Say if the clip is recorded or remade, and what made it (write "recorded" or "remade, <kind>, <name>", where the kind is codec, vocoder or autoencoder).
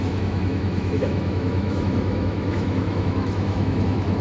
remade, autoencoder, DAC-VAE